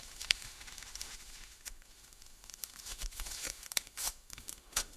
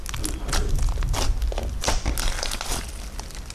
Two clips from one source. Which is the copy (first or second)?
first